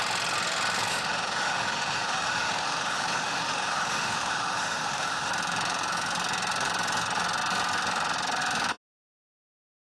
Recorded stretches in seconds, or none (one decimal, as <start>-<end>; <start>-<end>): 0.0-0.9; 5.3-9.8